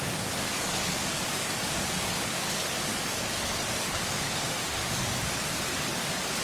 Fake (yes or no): yes